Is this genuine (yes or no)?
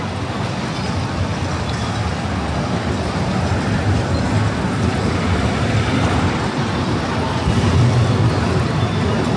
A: yes